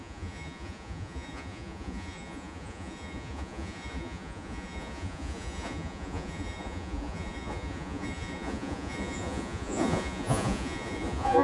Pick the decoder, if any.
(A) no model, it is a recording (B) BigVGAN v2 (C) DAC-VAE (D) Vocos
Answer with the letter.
D